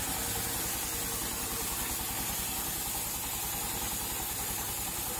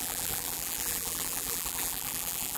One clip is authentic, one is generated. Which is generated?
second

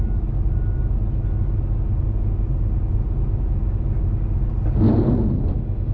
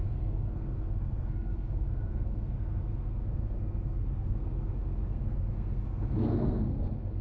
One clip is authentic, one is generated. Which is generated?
second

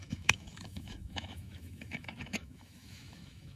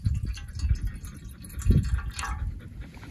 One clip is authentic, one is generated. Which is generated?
first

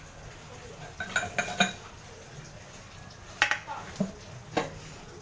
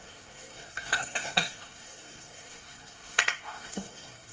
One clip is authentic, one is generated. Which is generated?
second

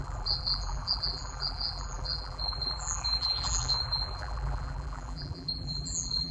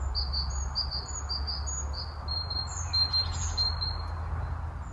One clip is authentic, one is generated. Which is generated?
first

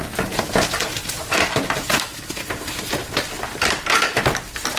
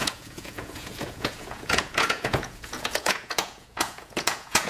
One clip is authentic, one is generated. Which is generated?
second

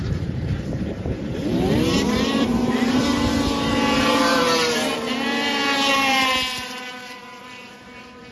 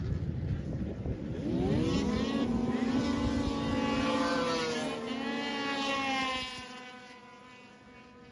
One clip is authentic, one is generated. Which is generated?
first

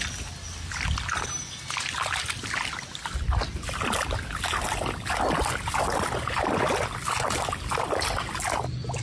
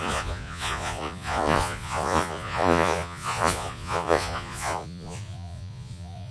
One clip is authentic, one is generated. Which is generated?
second